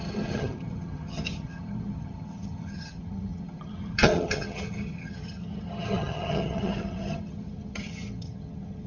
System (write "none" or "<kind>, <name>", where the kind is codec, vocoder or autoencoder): vocoder, HiFi-GAN